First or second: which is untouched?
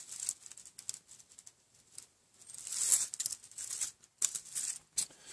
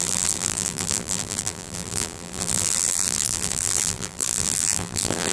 first